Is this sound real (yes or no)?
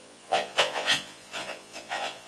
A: no